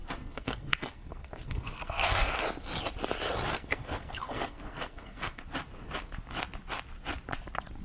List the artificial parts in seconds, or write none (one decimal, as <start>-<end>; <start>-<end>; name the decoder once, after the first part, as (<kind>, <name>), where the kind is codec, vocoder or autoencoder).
0.0-2.4 (codec, SNAC); 3.5-5.4